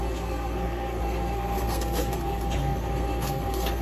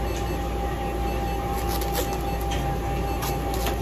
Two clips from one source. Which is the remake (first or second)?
first